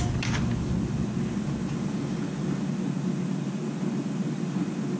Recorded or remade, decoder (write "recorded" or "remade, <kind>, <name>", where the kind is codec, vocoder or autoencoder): recorded